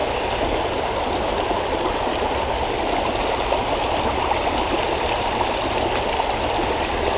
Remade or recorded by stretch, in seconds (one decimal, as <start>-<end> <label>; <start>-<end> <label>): 0.0-7.2 recorded